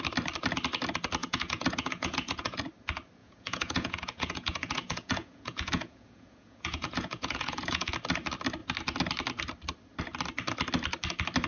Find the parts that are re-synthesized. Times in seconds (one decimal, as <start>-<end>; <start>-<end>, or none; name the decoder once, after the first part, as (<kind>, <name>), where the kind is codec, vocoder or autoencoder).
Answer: 1.2-2.6 (vocoder, Vocos); 3.2-7.9